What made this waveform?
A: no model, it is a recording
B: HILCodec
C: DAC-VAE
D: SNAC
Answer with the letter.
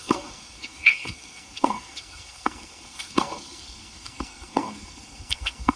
D